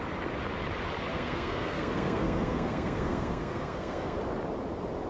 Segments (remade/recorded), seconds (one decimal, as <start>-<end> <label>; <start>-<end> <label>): 0.0-1.1 recorded; 1.1-4.2 remade; 4.2-5.1 recorded